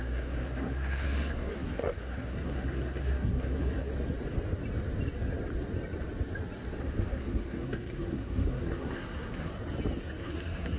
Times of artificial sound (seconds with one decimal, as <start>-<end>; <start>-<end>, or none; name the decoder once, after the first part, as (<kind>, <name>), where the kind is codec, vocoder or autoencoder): 0.0-3.9 (codec, SNAC); 6.8-9.5; 10.2-10.8